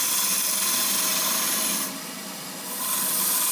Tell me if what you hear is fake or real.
real